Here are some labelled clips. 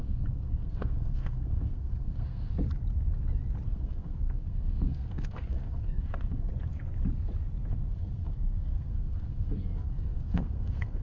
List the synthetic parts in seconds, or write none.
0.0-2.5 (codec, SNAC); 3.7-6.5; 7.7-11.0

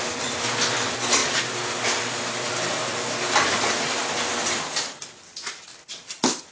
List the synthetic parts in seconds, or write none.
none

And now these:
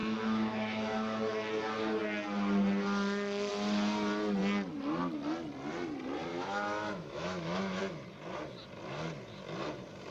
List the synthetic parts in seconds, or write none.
0.0-1.5 (autoencoder, DAC-VAE); 6.3-7.8